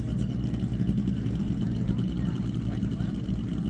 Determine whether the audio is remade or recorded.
recorded